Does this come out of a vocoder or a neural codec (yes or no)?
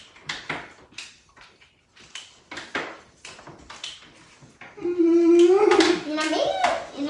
no